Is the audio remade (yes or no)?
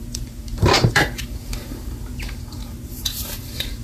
yes